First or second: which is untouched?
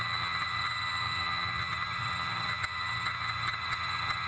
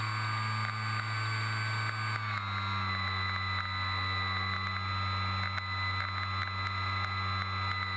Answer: second